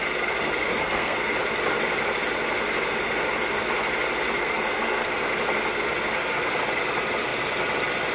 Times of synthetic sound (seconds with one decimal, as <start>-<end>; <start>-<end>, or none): 0.7-1.3; 4.4-5.1